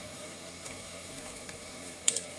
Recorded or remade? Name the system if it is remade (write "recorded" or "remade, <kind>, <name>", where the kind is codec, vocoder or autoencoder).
remade, codec, SNAC